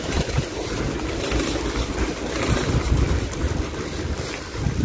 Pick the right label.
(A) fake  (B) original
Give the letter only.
B